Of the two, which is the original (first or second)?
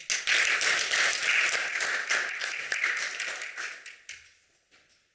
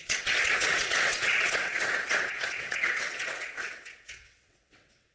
first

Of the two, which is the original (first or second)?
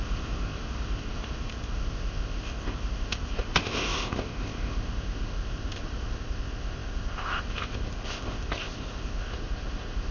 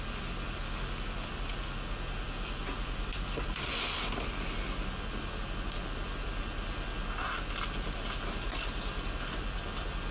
second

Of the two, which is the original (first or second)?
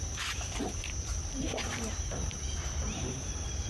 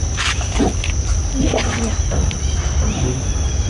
second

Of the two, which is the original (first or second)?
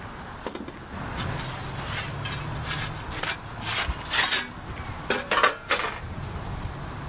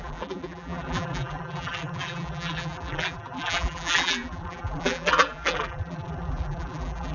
first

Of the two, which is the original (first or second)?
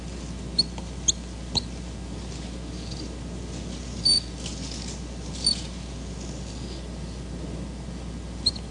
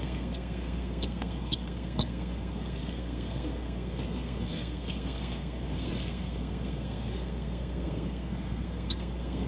first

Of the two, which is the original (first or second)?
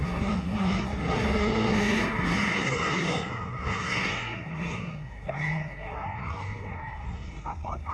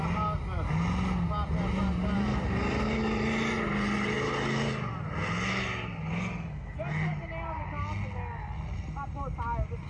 second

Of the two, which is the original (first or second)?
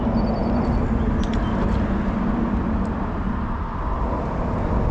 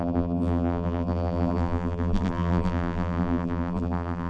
first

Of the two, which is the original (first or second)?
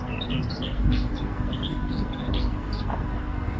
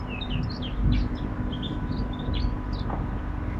second